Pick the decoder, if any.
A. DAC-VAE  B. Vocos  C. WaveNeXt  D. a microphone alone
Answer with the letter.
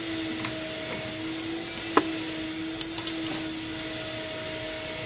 D